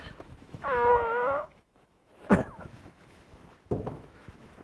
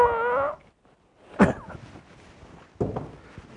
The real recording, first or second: second